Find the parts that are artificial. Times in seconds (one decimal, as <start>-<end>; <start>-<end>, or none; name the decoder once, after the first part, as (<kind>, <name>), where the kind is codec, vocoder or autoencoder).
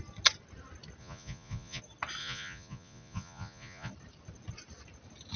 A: 1.0-1.8 (vocoder, Vocos); 2.2-3.9